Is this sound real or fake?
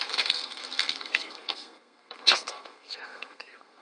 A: fake